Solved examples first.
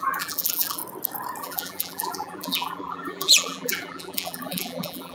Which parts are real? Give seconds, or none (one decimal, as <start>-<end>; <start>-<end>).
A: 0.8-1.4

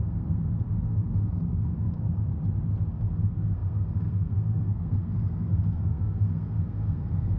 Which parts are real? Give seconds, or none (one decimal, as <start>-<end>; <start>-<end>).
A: 0.4-0.9; 2.3-2.9

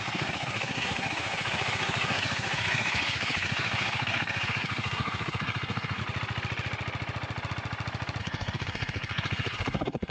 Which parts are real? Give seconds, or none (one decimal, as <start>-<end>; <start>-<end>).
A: 6.0-8.2